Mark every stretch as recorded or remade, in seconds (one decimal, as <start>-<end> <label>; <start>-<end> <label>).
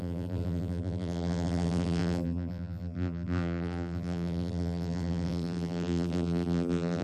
0.0-7.0 remade